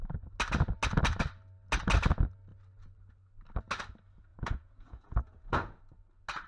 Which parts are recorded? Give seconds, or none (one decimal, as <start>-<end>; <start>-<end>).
0.0-4.3; 5.8-6.5